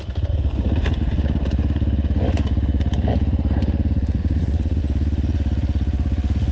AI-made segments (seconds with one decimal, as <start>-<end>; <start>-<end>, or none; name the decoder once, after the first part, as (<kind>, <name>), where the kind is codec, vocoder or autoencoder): 4.2-4.8 (vocoder, Vocos)